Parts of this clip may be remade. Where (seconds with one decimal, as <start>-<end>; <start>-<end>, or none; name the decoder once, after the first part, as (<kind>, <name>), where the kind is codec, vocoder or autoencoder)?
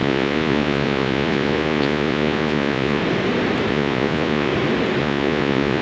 0.0-3.0 (vocoder, Vocos); 3.7-4.5; 5.0-5.8